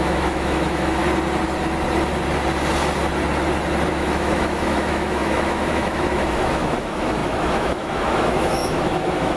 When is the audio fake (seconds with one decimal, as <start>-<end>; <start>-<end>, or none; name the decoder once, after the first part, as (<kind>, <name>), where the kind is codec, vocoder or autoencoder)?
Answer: 0.0-1.0 (autoencoder, DAC-VAE); 3.9-9.4